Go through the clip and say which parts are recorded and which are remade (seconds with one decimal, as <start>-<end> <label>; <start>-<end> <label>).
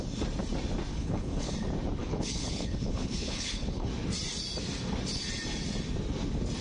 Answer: 0.0-0.9 recorded; 0.9-1.5 remade; 1.5-2.0 recorded; 2.0-3.9 remade; 3.9-6.6 recorded